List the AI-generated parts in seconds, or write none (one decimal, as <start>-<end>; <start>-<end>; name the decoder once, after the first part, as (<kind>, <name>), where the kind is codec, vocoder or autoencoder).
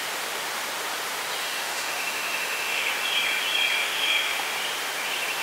1.4-2.9 (autoencoder, DAC-VAE); 3.8-4.5